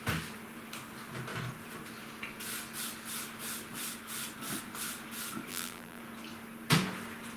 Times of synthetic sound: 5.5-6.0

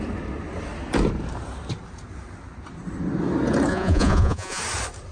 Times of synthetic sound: 3.7-4.6